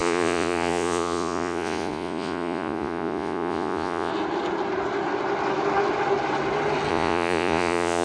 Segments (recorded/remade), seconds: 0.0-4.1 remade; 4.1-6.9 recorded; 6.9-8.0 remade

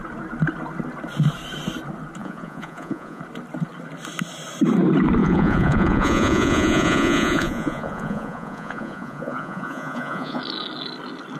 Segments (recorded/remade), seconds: 0.0-2.2 recorded; 2.2-3.2 remade; 3.2-5.2 recorded; 5.2-10.4 remade; 10.4-11.4 recorded